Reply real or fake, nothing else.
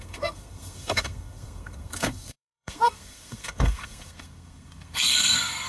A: fake